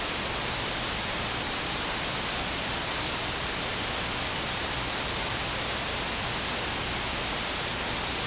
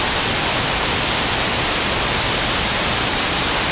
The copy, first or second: second